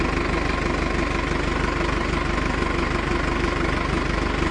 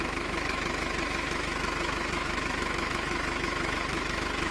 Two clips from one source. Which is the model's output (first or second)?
second